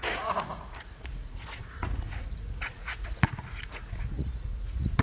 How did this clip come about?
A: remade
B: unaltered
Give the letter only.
A